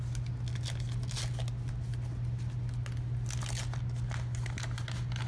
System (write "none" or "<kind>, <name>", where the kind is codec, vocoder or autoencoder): none